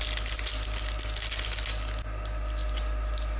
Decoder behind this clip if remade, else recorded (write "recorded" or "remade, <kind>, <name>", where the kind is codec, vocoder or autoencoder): recorded